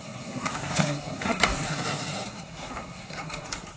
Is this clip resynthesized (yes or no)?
yes